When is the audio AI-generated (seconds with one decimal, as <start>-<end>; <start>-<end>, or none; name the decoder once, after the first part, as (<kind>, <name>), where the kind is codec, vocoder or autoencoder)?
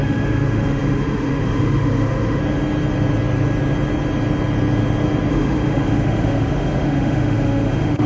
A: 0.0-2.4 (autoencoder, DAC-VAE); 5.3-8.1